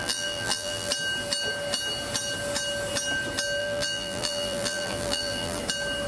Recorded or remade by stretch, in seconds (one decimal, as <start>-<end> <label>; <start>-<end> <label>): 0.0-0.9 remade; 0.9-3.6 recorded; 3.6-5.6 remade; 5.6-6.1 recorded